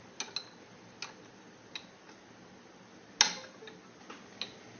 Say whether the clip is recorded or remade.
recorded